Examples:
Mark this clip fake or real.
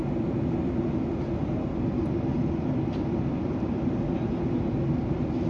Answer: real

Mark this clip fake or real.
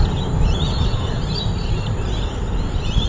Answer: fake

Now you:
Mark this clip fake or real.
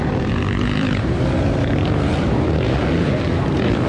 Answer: fake